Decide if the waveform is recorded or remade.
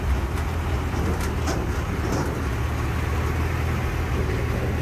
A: recorded